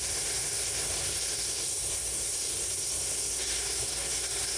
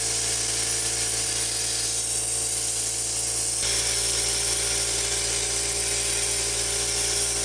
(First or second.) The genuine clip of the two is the second